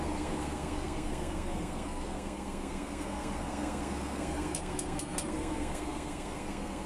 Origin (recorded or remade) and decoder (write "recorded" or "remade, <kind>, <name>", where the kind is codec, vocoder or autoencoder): remade, codec, SNAC